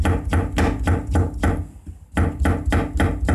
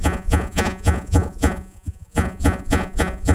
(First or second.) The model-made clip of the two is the second